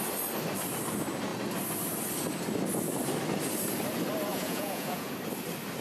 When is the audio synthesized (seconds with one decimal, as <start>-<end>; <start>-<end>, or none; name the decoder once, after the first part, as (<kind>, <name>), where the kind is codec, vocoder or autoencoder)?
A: 4.3-5.1 (vocoder, Vocos)